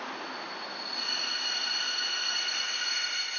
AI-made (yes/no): no